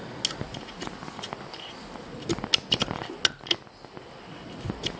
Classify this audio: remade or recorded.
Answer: recorded